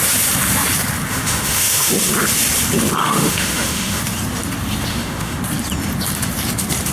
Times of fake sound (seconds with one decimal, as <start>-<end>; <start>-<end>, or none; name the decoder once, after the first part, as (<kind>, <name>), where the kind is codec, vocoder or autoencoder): 1.1-1.9 (autoencoder, DAC-VAE); 3.0-4.0; 4.9-5.4